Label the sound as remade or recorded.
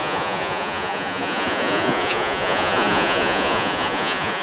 remade